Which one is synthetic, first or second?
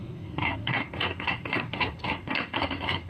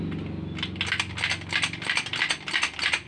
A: first